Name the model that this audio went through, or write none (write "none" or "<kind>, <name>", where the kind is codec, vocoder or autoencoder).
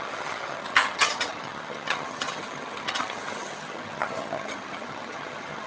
vocoder, HiFi-GAN